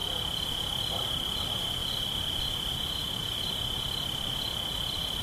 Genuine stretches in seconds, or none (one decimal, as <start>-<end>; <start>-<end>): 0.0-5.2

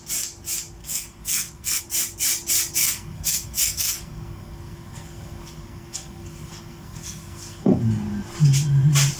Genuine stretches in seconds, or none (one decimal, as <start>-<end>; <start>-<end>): 0.0-0.8; 1.8-2.8; 7.8-9.2

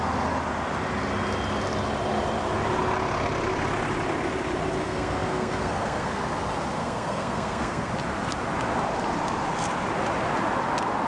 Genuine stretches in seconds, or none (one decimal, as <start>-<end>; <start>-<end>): 0.0-4.8; 6.2-6.8; 7.9-11.1